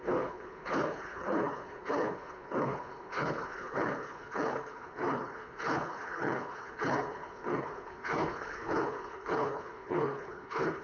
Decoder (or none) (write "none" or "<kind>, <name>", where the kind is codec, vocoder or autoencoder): codec, HILCodec